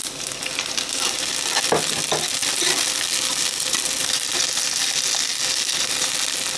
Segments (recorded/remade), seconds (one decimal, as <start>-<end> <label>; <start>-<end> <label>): 0.0-0.9 remade; 0.9-2.4 recorded; 2.4-4.5 remade; 4.5-6.6 recorded